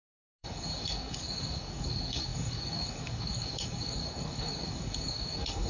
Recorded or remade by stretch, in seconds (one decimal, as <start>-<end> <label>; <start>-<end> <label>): 0.0-5.7 remade